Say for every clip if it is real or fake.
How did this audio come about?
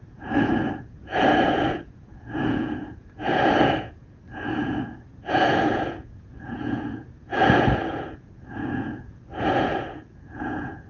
fake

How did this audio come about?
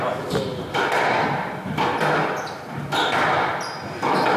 real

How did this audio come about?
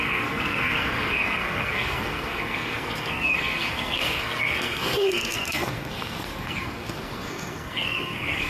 fake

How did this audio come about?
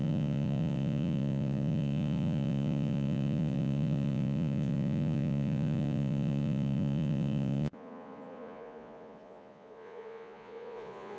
fake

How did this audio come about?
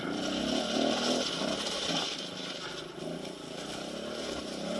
real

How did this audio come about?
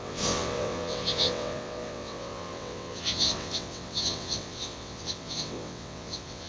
fake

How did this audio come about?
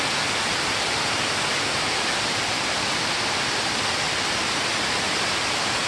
real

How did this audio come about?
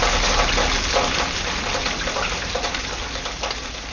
real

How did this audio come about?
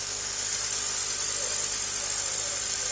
real